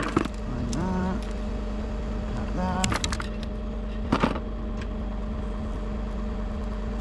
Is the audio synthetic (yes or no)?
no